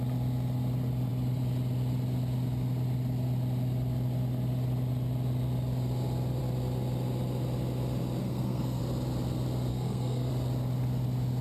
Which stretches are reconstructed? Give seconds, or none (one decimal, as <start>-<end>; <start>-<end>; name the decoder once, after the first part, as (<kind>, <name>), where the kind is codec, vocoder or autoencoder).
8.2-8.8 (codec, SNAC); 9.7-10.3